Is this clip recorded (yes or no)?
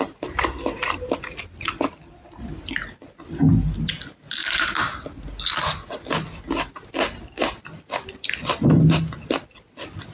yes